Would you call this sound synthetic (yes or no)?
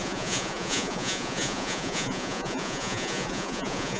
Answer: yes